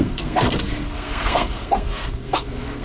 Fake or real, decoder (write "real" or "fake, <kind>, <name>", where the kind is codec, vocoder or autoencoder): fake, codec, SNAC